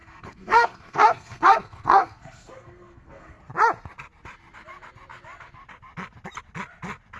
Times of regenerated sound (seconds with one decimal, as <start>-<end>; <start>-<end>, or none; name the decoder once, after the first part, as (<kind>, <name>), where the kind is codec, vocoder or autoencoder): 0.0-3.4 (codec, SNAC)